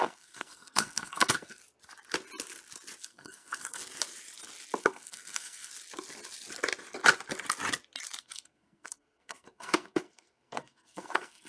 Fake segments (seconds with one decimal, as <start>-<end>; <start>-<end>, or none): 0.0-1.6; 3.0-3.8; 4.8-5.7; 8.2-11.5